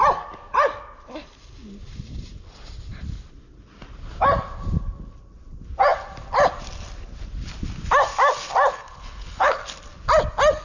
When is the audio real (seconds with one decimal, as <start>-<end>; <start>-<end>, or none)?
0.0-8.7; 9.6-10.6